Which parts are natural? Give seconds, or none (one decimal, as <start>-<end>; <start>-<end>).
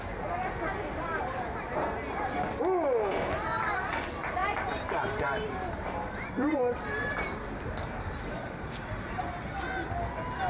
0.0-4.4; 9.2-10.5